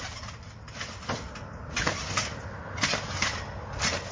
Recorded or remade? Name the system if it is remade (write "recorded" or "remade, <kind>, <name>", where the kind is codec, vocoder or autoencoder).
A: recorded